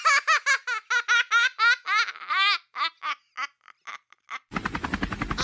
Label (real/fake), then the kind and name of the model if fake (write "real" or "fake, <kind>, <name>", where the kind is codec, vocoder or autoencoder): real